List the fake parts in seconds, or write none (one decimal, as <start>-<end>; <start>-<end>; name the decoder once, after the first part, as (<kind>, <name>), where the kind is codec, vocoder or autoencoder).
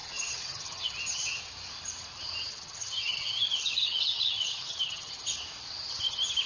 0.0-1.4 (vocoder, HiFi-GAN); 2.5-5.2